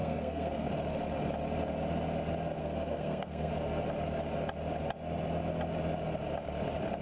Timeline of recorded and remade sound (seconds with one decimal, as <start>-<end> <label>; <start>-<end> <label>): 0.0-0.7 remade; 0.7-2.6 recorded; 2.6-3.5 remade; 3.5-7.0 recorded